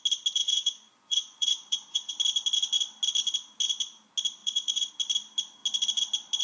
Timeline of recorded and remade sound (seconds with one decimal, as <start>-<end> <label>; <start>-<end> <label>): 0.0-0.4 recorded; 0.4-2.1 remade; 2.1-4.4 recorded; 4.4-4.9 remade; 4.9-6.4 recorded